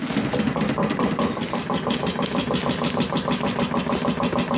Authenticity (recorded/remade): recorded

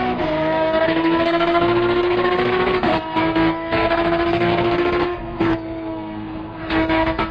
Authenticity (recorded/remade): remade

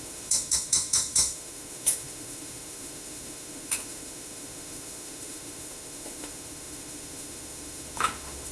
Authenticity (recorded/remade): remade